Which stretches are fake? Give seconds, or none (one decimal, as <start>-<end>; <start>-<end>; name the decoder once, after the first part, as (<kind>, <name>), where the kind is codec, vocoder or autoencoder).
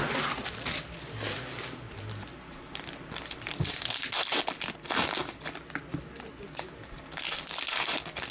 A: none